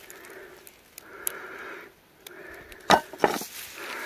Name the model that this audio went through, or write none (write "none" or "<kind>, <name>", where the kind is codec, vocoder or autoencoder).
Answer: none